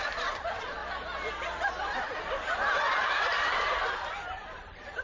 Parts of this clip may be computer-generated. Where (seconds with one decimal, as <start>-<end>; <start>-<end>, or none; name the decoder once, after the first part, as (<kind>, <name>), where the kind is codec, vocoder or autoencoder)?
0.0-0.8 (vocoder, BigVGAN v2); 1.9-5.0